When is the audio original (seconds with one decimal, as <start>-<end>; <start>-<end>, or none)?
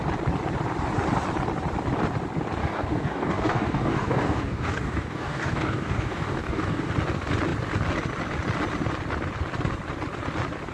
0.0-2.6; 6.9-10.7